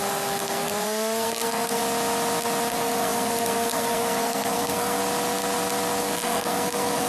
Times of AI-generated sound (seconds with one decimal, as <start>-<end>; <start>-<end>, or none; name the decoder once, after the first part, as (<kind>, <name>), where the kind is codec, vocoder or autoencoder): 0.0-1.8 (codec, SNAC); 2.7-5.0; 6.0-7.1